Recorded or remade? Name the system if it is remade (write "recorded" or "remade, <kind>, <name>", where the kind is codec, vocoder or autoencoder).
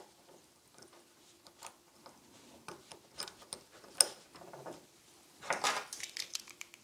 recorded